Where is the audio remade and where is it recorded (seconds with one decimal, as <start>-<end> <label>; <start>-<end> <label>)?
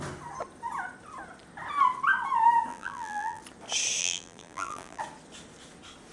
0.0-2.7 recorded; 2.7-3.4 remade; 3.4-4.0 recorded; 4.0-5.0 remade; 5.0-6.1 recorded